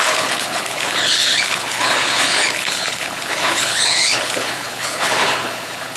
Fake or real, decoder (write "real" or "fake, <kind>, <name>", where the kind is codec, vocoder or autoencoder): fake, codec, HILCodec